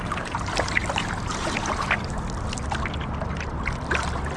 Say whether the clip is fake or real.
real